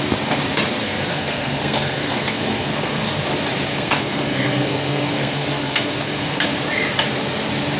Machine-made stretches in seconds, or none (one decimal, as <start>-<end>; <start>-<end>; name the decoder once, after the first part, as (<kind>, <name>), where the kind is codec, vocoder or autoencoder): 0.8-3.2 (codec, SNAC); 3.7-6.5